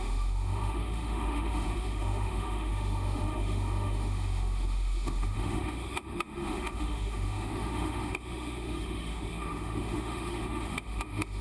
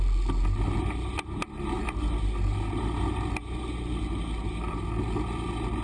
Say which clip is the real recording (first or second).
second